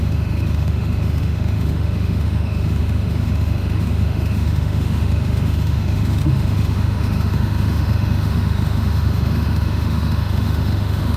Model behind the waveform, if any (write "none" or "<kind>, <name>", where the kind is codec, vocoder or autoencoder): autoencoder, DAC-VAE